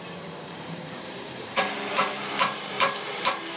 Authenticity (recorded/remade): remade